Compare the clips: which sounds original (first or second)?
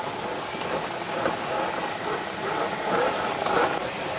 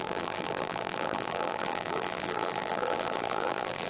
first